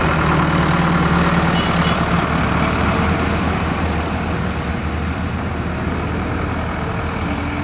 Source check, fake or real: real